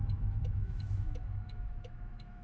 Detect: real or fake fake